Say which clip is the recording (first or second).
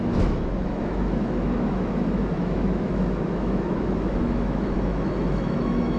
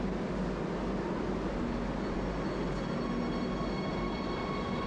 second